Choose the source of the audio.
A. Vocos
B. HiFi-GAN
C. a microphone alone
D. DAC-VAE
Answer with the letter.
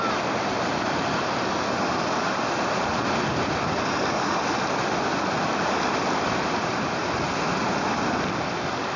C